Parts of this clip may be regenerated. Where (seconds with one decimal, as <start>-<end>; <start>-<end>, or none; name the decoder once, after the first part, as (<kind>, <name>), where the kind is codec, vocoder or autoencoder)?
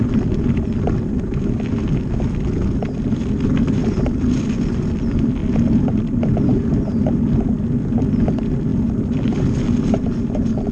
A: 8.7-9.4 (vocoder, BigVGAN v2)